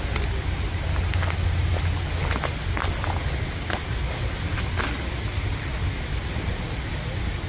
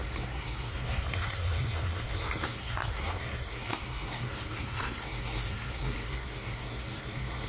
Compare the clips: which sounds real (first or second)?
first